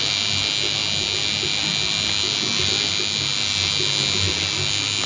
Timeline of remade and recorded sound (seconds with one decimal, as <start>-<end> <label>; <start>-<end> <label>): 0.0-5.1 recorded

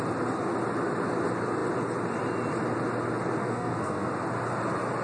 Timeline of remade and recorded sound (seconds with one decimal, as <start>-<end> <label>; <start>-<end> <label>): 0.0-3.4 recorded; 3.4-4.1 remade; 4.1-5.0 recorded

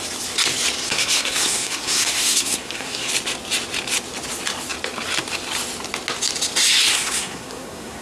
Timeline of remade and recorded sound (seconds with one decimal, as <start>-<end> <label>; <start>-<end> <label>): 0.0-0.8 recorded; 0.8-3.1 remade; 3.1-6.9 recorded; 6.9-8.0 remade

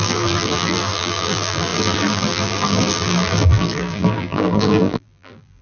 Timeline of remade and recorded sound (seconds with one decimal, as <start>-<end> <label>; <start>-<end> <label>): 0.0-5.6 remade

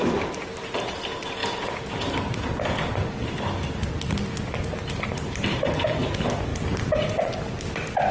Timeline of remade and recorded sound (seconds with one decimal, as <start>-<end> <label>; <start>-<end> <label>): 0.0-8.1 recorded